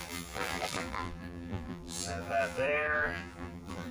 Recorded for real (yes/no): no